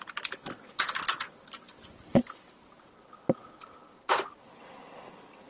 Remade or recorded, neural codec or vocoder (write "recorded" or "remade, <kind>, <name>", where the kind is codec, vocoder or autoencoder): recorded